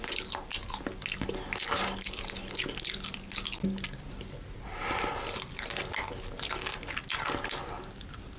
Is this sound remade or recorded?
recorded